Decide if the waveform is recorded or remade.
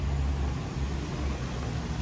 recorded